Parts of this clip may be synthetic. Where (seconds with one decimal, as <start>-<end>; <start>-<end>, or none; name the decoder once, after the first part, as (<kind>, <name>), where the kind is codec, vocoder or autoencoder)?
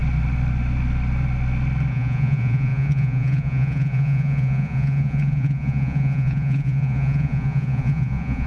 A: 1.9-8.5 (vocoder, Vocos)